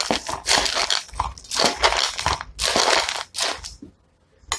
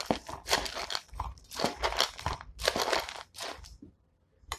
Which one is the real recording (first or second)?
first